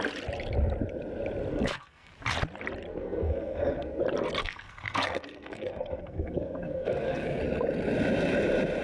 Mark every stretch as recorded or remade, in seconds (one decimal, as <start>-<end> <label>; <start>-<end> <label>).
0.0-1.5 recorded; 1.5-2.1 remade; 2.1-2.9 recorded; 2.9-4.0 remade; 4.0-4.4 recorded; 4.4-7.4 remade; 7.4-8.8 recorded

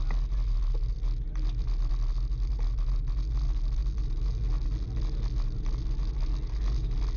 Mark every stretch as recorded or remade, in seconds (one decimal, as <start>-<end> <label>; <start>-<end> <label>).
0.0-7.2 recorded

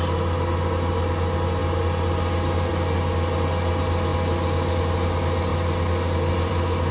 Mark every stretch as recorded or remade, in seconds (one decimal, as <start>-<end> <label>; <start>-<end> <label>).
0.0-6.9 recorded